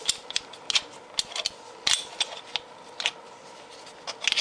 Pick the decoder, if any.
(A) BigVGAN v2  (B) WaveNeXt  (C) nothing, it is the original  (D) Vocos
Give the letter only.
C